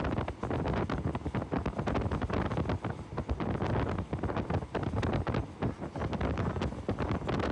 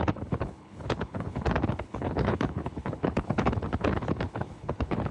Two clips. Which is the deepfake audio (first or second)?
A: second